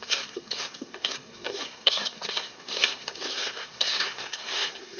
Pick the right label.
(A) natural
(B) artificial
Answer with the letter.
B